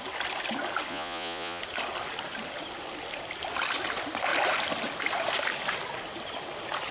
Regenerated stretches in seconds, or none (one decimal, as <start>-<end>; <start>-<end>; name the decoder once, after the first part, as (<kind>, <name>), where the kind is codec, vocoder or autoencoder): 0.9-1.6 (vocoder, Vocos)